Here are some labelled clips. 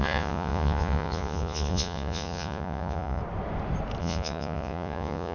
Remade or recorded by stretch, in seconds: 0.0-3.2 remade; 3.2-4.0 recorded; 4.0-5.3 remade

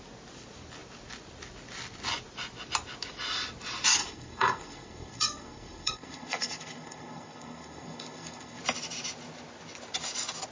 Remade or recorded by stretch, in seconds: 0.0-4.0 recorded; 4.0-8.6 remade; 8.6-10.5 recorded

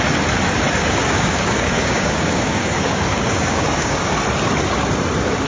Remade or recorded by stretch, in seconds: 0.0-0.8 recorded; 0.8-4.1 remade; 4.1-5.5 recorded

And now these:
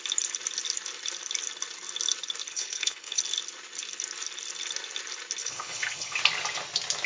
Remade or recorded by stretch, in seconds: 0.0-2.5 recorded; 2.5-3.2 remade; 3.2-5.4 recorded; 5.4-6.2 remade; 6.2-7.1 recorded